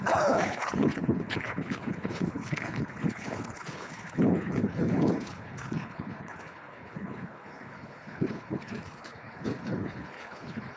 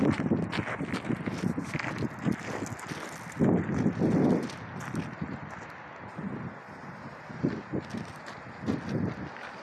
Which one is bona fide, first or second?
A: second